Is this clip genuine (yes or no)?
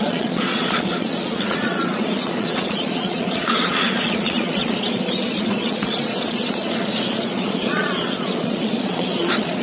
no